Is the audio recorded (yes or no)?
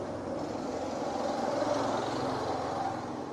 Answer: yes